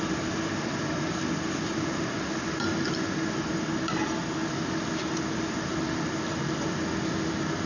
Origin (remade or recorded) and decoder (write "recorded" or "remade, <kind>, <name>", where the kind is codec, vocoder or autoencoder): recorded